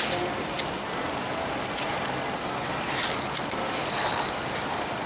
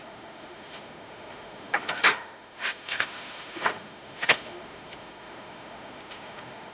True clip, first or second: first